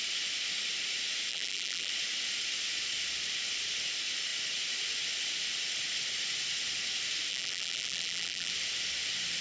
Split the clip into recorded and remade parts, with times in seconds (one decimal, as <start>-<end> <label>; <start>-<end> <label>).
0.0-1.3 recorded; 1.3-1.9 remade; 1.9-7.3 recorded; 7.3-8.5 remade; 8.5-9.4 recorded